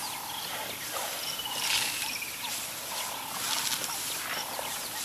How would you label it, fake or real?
real